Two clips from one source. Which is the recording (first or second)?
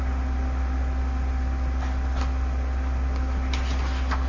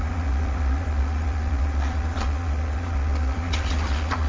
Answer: first